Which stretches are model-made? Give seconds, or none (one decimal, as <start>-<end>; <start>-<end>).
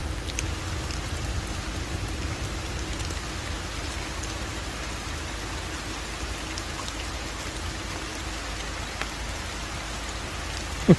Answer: none